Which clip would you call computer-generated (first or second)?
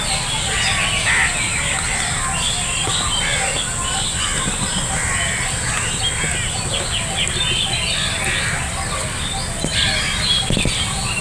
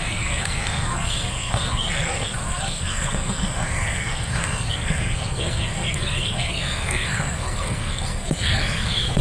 second